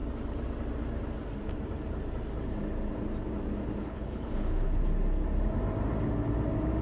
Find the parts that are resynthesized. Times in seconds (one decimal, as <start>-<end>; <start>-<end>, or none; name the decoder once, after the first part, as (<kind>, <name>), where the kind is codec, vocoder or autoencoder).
3.8-4.8 (codec, HILCodec)